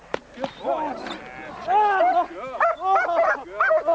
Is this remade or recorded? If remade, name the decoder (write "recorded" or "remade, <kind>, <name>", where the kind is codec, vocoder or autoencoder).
recorded